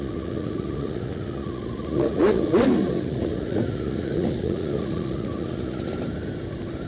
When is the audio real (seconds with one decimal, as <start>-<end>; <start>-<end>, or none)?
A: 5.9-6.9